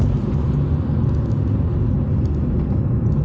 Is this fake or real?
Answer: real